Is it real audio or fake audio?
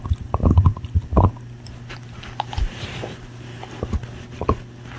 real